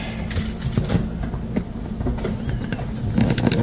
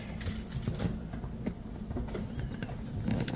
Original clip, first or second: first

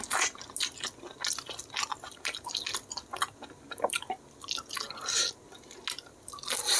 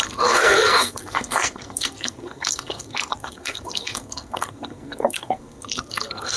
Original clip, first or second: first